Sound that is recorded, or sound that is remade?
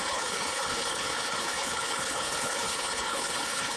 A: remade